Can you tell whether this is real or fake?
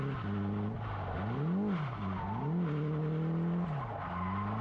real